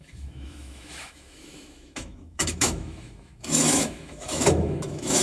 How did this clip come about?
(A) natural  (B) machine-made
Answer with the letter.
B